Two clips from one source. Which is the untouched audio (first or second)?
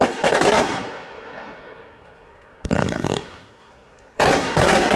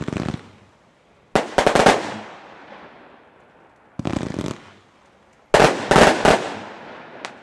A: second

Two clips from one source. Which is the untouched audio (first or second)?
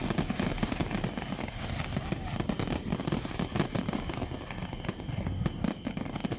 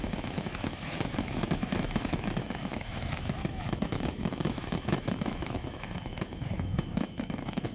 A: first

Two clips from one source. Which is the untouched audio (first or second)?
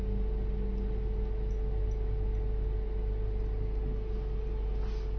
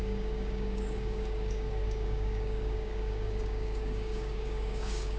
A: first